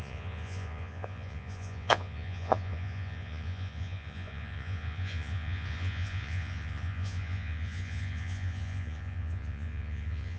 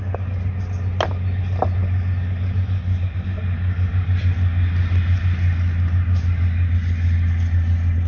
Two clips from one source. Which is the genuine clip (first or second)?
second